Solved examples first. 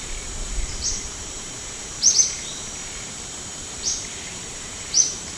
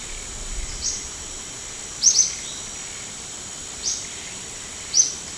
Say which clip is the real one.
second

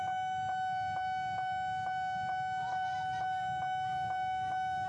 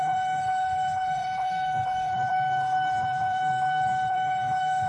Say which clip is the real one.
first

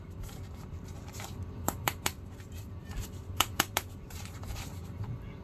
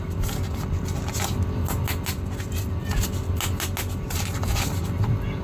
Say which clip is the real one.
second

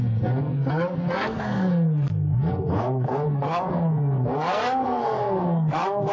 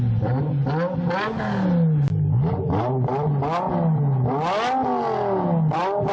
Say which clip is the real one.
second